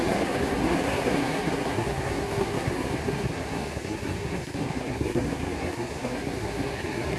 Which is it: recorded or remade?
remade